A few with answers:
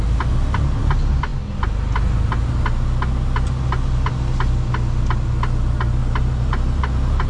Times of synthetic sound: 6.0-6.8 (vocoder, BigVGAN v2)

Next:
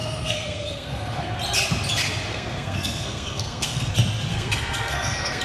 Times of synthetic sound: 0.0-1.3 (codec, SNAC); 2.3-3.9; 4.3-5.4

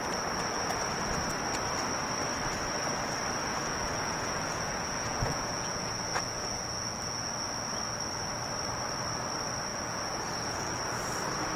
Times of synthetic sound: 3.4-7.3 (vocoder, Vocos); 9.7-10.8

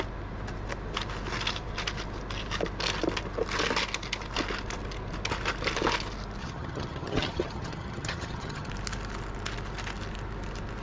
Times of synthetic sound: 6.4-8.7 (vocoder, HiFi-GAN)

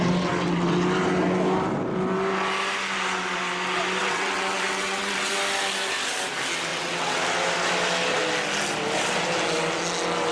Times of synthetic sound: 4.0-5.3 (vocoder, WaveNeXt); 6.7-7.2

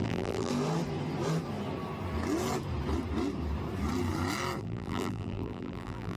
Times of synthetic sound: 0.0-0.5 (vocoder, BigVGAN v2); 4.6-6.2

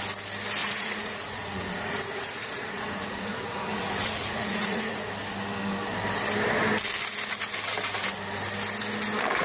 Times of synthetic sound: 0.6-5.1 (vocoder, Vocos)

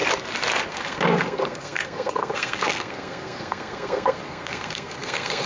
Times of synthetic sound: 0.7-5.5 (codec, SNAC)